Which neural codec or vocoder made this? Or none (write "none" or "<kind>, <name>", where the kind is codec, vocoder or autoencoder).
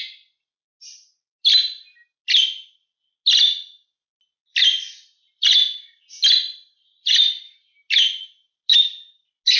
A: none